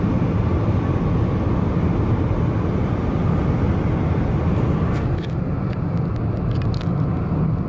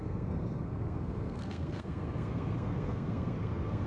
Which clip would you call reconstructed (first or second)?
second